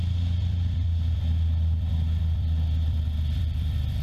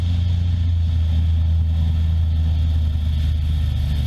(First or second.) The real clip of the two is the second